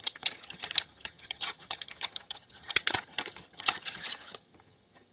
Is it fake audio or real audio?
fake